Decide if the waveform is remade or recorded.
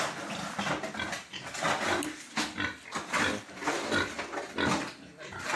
recorded